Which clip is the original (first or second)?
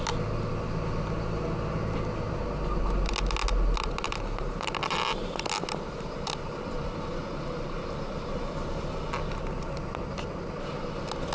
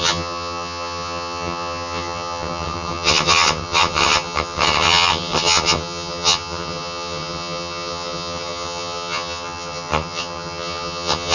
first